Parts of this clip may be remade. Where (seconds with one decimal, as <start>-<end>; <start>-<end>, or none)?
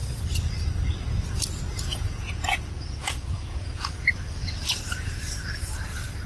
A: 1.9-4.0